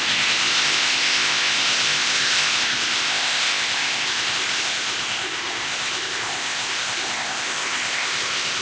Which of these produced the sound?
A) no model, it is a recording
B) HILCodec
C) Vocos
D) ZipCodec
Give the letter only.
D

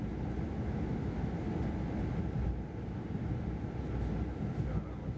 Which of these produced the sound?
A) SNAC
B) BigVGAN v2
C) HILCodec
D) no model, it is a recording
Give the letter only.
D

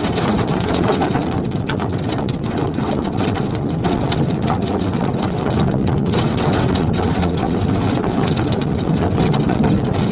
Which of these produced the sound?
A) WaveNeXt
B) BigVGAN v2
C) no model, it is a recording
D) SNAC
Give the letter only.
A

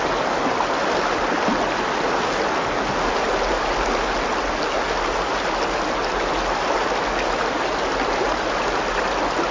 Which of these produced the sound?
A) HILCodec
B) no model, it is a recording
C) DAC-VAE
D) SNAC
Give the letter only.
B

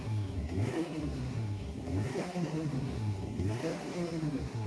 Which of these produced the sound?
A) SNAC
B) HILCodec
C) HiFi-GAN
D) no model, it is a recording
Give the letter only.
A